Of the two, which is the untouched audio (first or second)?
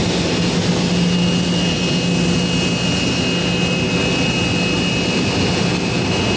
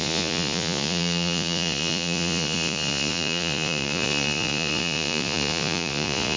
first